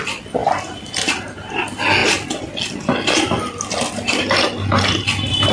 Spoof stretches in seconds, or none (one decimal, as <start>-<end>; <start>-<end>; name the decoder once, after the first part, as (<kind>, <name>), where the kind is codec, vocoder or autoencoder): none